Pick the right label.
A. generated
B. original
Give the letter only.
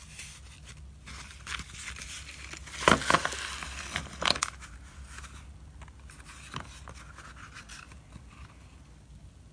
B